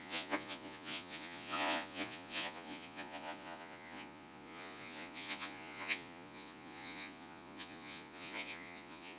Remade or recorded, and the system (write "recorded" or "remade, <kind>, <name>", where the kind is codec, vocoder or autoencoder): remade, vocoder, Vocos